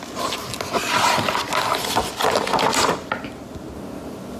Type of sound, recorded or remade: recorded